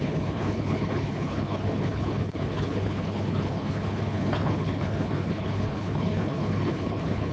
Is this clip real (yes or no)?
no